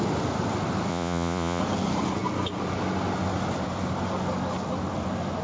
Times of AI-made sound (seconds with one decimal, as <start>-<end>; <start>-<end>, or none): 0.9-1.6